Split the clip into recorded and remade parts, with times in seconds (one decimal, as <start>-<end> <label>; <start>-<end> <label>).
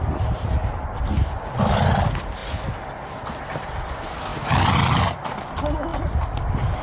0.0-4.3 recorded; 4.3-4.9 remade; 4.9-6.8 recorded